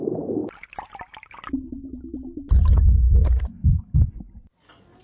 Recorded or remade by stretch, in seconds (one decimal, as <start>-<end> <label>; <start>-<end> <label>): 0.0-5.0 recorded